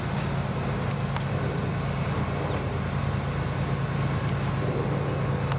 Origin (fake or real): real